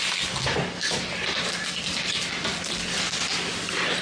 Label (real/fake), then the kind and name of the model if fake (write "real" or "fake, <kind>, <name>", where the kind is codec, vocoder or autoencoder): real